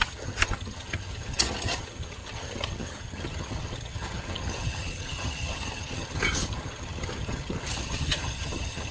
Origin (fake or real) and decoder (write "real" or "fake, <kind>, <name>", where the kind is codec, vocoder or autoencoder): fake, vocoder, HiFi-GAN